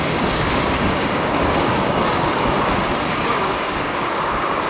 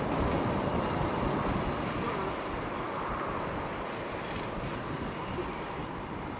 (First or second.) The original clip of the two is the second